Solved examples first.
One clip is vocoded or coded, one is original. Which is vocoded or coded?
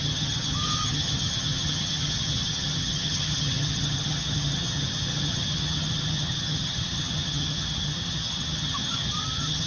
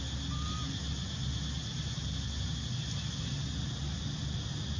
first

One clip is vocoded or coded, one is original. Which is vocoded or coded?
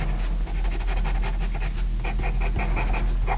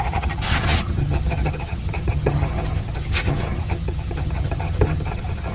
second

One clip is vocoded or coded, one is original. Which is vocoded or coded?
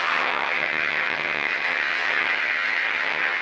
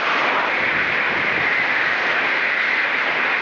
first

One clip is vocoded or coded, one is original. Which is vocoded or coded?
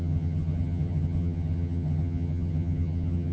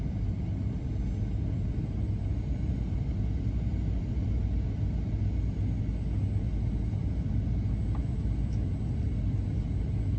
first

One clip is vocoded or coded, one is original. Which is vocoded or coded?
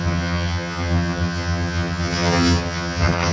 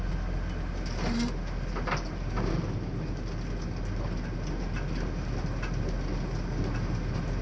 first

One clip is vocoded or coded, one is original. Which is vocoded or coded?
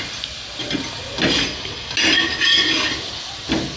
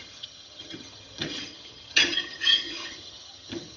second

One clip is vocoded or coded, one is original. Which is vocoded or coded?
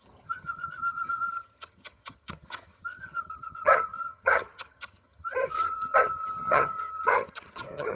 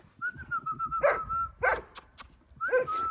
first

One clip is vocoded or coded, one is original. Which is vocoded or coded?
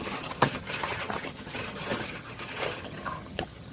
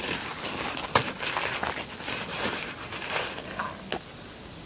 first